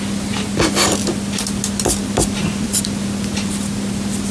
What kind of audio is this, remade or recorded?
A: recorded